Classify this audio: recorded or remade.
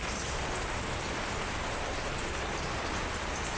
recorded